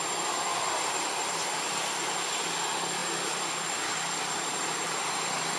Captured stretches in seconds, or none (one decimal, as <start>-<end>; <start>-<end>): none